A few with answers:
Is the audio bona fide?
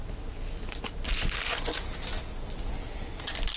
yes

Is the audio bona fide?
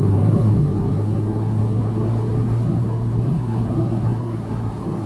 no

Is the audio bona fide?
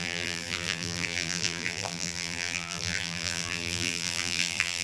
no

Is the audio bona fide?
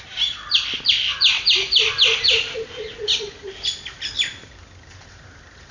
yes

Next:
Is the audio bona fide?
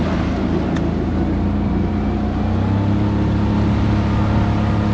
yes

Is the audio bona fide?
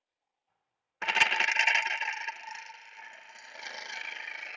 yes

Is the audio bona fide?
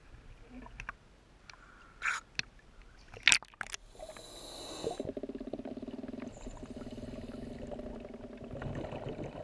yes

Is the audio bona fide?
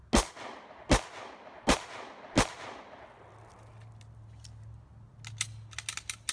yes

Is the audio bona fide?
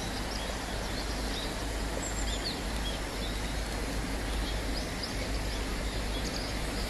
yes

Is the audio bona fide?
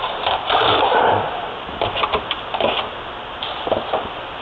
no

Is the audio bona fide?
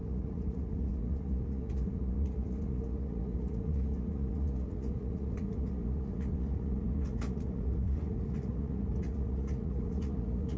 no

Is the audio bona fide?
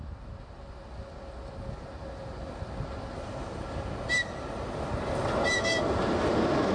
yes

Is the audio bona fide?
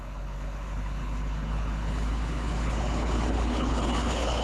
no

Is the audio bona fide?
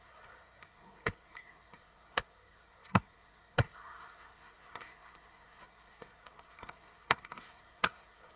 no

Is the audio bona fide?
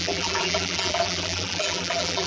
no